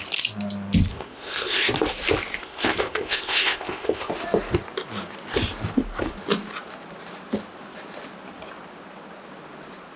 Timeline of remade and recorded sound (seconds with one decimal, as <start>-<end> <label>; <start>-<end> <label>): 0.0-0.9 recorded; 0.9-1.7 remade; 1.7-2.4 recorded; 2.4-4.1 remade; 4.1-10.0 recorded